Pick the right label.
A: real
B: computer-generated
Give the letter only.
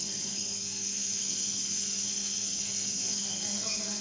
B